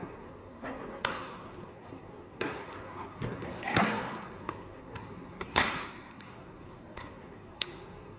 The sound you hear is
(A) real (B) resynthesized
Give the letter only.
B